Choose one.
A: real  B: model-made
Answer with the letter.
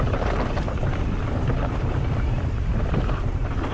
A